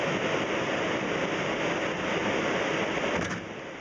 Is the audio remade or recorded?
recorded